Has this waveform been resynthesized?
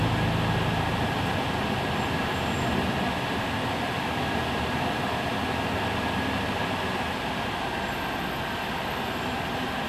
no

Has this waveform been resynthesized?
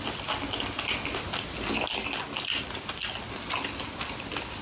no